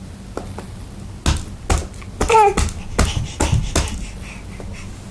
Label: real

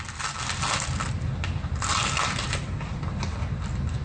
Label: real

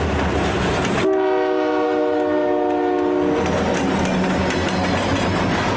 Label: real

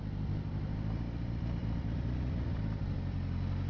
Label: real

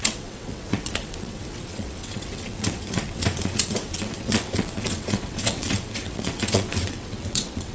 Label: fake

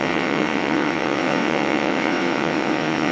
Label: fake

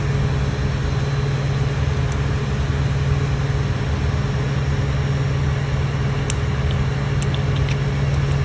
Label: real